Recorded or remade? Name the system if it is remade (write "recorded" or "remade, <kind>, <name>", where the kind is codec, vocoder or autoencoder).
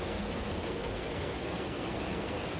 remade, codec, SNAC